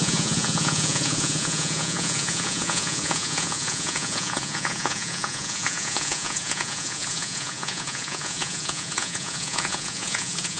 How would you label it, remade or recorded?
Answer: remade